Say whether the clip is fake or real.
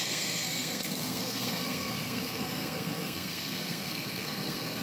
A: fake